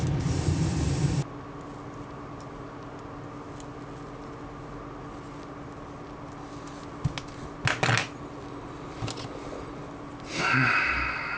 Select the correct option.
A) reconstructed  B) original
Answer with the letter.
B